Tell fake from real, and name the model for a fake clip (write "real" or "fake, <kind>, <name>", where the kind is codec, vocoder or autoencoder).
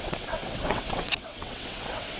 fake, vocoder, WaveNeXt